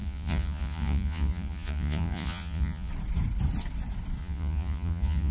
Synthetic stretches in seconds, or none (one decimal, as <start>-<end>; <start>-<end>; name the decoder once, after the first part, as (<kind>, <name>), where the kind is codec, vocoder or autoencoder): 0.0-2.9 (vocoder, Vocos); 4.2-5.3